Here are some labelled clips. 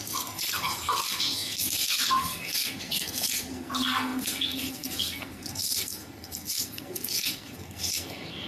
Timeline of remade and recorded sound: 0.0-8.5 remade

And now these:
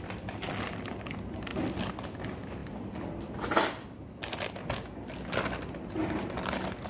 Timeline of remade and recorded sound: 0.0-6.9 recorded

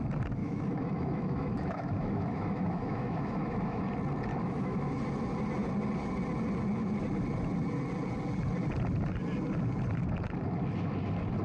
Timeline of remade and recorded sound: 0.0-0.4 recorded; 0.4-3.8 remade; 3.8-4.3 recorded; 4.3-5.0 remade; 5.0-11.4 recorded

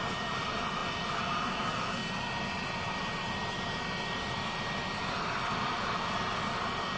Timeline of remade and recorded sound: 0.0-2.0 remade; 2.0-4.4 recorded; 4.4-7.0 remade

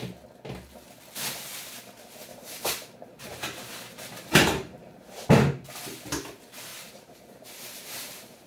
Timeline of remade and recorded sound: 0.0-2.3 recorded; 2.3-5.3 remade; 5.3-6.7 recorded; 6.7-8.5 remade

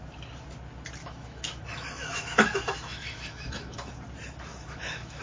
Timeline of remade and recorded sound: 0.0-1.0 recorded; 1.0-3.9 remade; 3.9-4.5 recorded; 4.5-5.2 remade

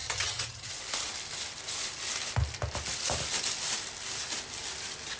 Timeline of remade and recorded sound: 0.0-0.7 remade; 0.7-5.2 recorded

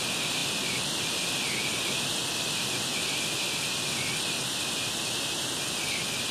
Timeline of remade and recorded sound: 0.0-6.3 recorded